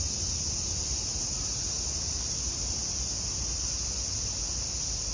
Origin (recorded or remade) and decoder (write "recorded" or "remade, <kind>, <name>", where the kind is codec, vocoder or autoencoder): recorded